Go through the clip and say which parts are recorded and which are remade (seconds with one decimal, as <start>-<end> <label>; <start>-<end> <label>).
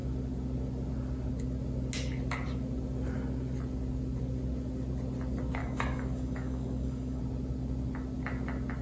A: 0.0-5.6 recorded; 5.6-7.2 remade; 7.2-8.8 recorded